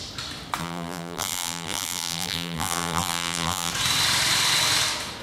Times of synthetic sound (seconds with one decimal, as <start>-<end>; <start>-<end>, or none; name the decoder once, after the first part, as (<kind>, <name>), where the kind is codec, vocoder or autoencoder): 0.6-3.7 (vocoder, BigVGAN v2)